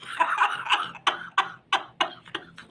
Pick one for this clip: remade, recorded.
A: recorded